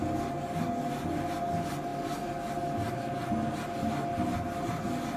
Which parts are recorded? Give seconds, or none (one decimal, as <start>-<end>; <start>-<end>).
0.0-5.2